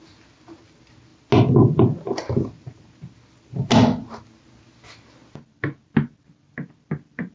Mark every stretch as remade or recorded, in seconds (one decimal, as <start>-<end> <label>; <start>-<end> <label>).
0.0-7.3 recorded